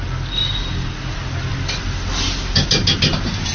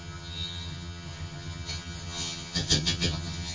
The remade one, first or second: second